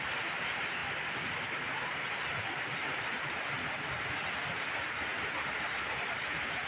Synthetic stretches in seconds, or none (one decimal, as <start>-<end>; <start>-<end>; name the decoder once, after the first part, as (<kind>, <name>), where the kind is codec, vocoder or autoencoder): none